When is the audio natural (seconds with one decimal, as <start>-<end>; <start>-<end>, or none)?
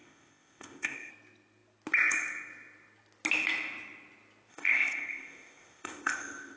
1.1-4.5